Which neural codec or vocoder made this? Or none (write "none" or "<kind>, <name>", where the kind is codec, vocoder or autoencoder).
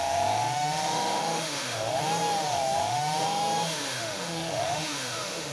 autoencoder, DAC-VAE